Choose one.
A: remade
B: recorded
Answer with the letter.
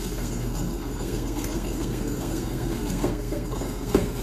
A